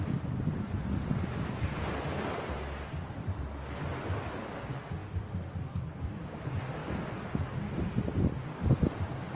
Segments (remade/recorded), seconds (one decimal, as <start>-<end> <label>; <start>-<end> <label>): 0.0-9.3 recorded

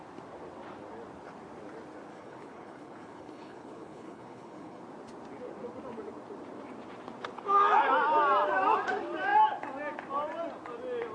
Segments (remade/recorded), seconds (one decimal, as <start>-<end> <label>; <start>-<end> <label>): 0.0-2.1 recorded; 2.1-4.8 remade; 4.8-11.1 recorded

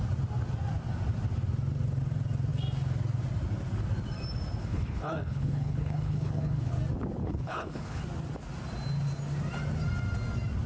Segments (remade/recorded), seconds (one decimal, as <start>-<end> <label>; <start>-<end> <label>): 0.0-4.6 recorded; 4.6-6.7 remade; 6.7-7.2 recorded; 7.2-8.0 remade; 8.0-10.7 recorded

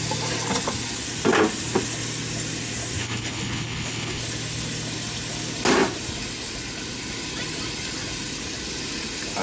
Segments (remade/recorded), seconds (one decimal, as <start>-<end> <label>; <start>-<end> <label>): 0.0-3.0 recorded; 3.0-4.2 remade; 4.2-9.4 recorded